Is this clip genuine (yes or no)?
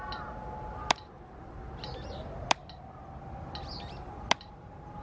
yes